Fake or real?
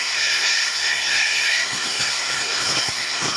fake